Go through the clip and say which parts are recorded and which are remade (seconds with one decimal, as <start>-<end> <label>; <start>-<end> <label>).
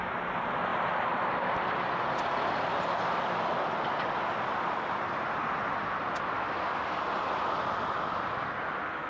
0.0-0.7 recorded; 0.7-1.5 remade; 1.5-9.1 recorded